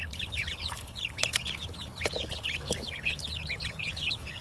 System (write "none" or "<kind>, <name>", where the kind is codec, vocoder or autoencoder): codec, HILCodec